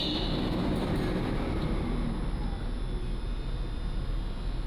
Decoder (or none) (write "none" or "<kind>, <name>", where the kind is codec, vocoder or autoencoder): none